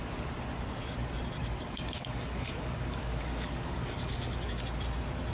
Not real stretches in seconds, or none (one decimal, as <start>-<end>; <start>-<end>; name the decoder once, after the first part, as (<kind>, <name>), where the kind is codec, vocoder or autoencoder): 1.4-4.6 (codec, DAC)